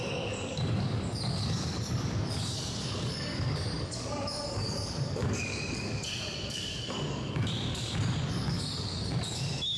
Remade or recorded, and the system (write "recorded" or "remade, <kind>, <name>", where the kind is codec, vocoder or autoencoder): remade, codec, DAC